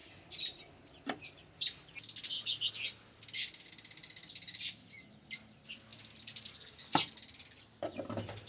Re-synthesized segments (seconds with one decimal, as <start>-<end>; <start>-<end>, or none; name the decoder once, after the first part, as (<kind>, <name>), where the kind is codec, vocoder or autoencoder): none